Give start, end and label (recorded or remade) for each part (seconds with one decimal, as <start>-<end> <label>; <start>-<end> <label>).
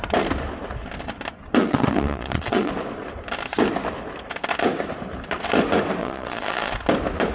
0.0-1.6 recorded; 1.6-2.7 remade; 2.7-6.0 recorded; 6.0-6.7 remade; 6.7-7.3 recorded